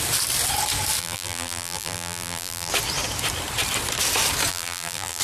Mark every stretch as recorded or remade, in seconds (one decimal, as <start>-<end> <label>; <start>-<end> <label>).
0.0-1.0 recorded; 1.0-2.7 remade; 2.7-4.5 recorded; 4.5-5.2 remade